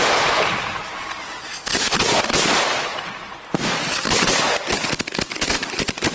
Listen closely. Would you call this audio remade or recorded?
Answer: recorded